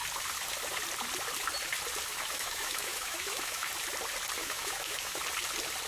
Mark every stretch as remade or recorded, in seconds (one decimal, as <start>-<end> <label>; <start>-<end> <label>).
0.0-2.1 recorded; 2.1-3.7 remade; 3.7-4.4 recorded; 4.4-5.2 remade; 5.2-5.9 recorded